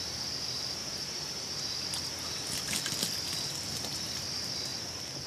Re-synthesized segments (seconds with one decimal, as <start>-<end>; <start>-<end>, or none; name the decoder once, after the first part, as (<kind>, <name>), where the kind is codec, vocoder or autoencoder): none